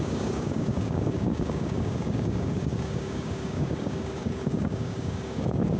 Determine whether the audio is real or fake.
fake